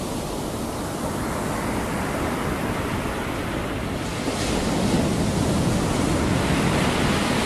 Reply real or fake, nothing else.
real